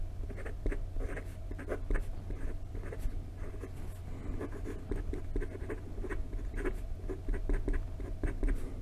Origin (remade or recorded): remade